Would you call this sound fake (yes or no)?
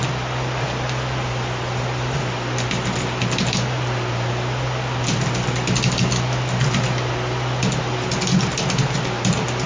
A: no